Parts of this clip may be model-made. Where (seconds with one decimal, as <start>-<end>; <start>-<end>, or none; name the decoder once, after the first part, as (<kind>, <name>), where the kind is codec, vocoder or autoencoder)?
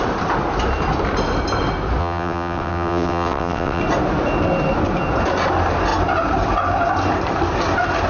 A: 2.0-3.8 (vocoder, WaveNeXt)